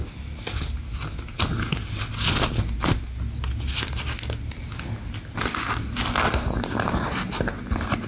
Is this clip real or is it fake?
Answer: real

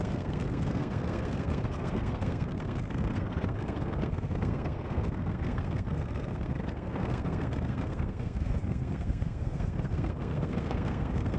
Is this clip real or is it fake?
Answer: fake